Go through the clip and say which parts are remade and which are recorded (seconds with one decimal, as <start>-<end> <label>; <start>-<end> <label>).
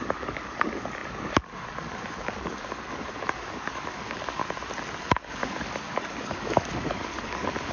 0.0-4.4 remade; 4.4-5.3 recorded; 5.3-7.7 remade